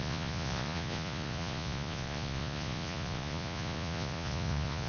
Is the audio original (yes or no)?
no